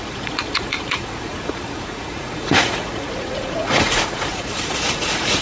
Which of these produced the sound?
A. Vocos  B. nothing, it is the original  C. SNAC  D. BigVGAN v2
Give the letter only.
A